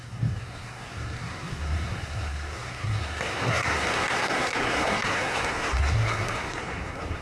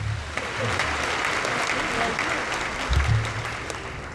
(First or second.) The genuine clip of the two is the second